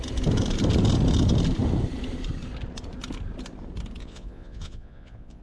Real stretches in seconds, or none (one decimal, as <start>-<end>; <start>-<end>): 0.0-4.0